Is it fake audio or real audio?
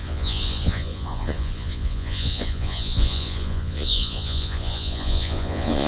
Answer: fake